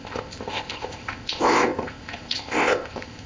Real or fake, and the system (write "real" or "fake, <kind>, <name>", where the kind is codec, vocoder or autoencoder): fake, codec, ZipCodec